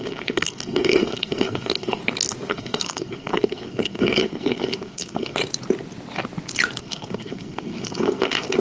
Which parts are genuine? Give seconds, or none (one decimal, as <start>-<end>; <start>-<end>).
2.0-2.5; 5.4-6.8